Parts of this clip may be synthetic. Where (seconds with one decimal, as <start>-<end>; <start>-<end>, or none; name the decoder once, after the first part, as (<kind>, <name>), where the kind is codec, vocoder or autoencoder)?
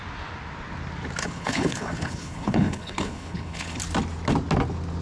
1.2-3.8 (codec, HILCodec)